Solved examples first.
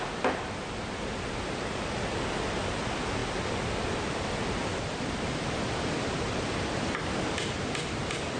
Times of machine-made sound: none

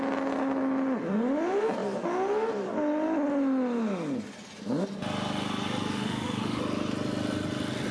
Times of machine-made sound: 5.9-6.6 (autoencoder, DAC-VAE)